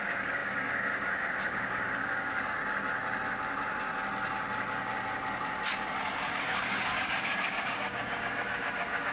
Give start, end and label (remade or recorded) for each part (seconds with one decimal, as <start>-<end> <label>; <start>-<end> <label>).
0.0-2.6 remade; 2.6-6.4 recorded; 6.4-9.1 remade